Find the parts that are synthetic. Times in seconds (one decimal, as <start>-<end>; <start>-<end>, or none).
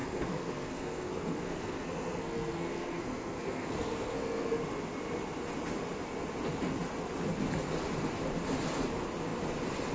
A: 0.0-4.6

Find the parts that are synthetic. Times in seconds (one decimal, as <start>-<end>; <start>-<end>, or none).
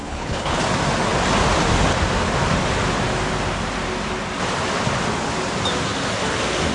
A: 0.0-0.6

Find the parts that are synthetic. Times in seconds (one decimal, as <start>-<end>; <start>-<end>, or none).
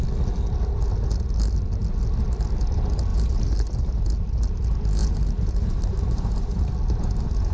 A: 3.1-4.0; 5.0-6.7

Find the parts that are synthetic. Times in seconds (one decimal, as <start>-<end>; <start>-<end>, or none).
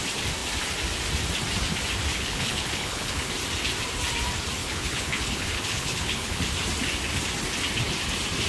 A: 2.1-3.3; 4.6-6.4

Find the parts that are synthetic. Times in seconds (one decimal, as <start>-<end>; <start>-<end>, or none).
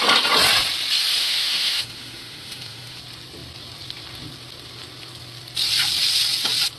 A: 1.2-3.0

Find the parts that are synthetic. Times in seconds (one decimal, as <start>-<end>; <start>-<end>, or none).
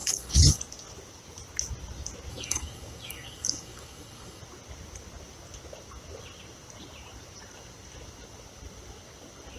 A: 0.0-0.6; 2.3-4.4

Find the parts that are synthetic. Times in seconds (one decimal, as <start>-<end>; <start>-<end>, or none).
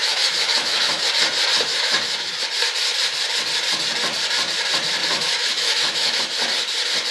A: 0.0-1.0; 1.7-2.3; 5.0-6.2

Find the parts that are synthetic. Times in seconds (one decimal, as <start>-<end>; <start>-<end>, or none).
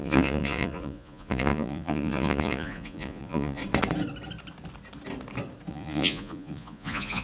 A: 0.0-3.6; 5.7-7.2